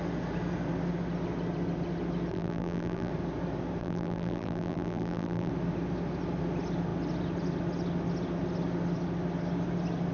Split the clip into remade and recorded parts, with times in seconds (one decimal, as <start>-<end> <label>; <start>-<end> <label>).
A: 0.0-2.3 recorded; 2.3-3.1 remade; 3.1-3.8 recorded; 3.8-5.5 remade; 5.5-10.1 recorded